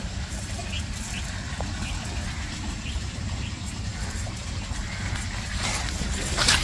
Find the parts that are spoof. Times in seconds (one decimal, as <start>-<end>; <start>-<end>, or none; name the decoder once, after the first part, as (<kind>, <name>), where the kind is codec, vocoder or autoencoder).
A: 0.0-0.6 (vocoder, BigVGAN v2); 2.9-4.8; 5.5-6.6